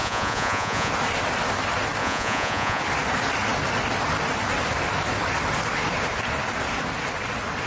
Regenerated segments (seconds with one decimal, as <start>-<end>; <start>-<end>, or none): 0.0-0.9; 2.0-2.8